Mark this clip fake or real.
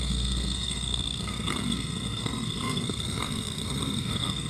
fake